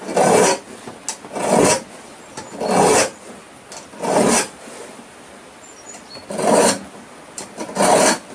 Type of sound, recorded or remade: recorded